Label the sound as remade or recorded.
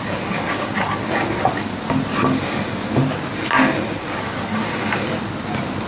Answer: recorded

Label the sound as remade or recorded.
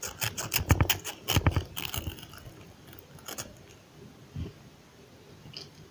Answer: recorded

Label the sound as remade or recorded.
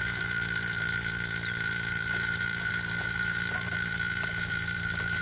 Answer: remade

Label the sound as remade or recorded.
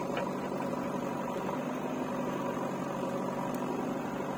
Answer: recorded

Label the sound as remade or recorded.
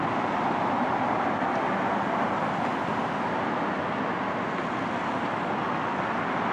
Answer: recorded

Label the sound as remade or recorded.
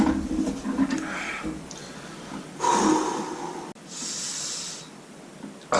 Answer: recorded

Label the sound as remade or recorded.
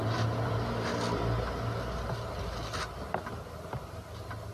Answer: recorded